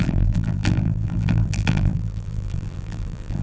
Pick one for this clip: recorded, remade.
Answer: remade